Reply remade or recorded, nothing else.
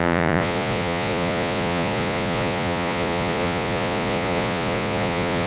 remade